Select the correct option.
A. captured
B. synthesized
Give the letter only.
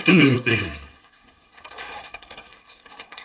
B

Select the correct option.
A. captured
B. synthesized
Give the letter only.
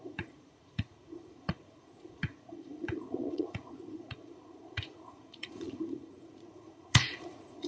B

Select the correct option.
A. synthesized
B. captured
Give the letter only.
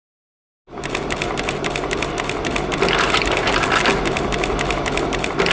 B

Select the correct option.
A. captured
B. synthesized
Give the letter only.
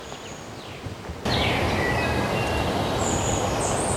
A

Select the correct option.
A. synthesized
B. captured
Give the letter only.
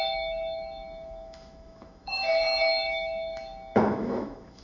A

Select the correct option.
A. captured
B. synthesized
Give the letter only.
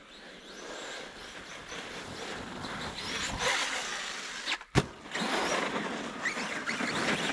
A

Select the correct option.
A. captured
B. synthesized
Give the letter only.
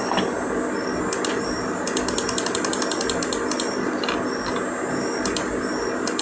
A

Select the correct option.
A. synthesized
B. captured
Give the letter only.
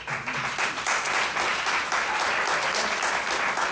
B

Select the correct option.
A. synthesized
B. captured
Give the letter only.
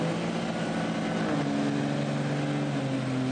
B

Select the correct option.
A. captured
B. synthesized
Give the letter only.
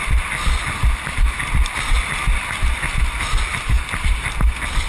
A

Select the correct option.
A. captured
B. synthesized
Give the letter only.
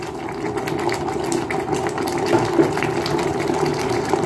A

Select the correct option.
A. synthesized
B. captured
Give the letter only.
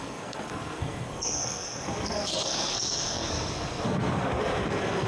A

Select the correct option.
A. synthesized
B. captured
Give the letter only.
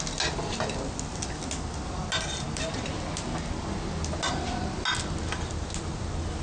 B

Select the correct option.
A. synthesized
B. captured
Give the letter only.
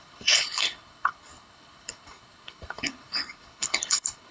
A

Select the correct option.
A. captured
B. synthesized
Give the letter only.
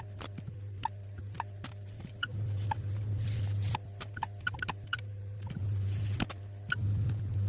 B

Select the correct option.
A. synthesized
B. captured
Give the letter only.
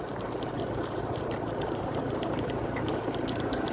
A